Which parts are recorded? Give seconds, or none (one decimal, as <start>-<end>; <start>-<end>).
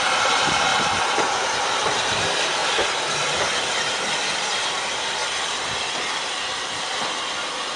0.7-1.4; 5.2-7.8